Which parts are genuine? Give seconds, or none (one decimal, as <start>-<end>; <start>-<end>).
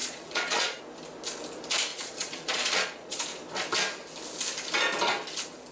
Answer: 0.8-1.9; 3.2-5.7